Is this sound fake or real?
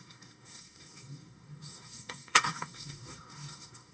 fake